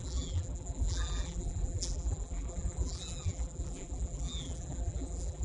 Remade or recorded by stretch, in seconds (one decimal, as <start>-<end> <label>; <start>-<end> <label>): 0.0-5.4 remade